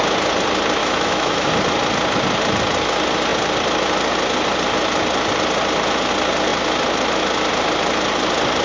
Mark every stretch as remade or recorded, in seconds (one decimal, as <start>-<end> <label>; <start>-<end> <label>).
0.0-0.8 recorded; 0.8-1.5 remade; 1.5-8.6 recorded